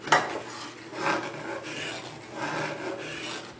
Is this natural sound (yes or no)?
yes